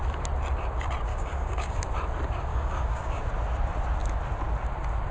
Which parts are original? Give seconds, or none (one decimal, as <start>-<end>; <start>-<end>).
0.0-1.1; 1.8-2.5; 3.2-5.1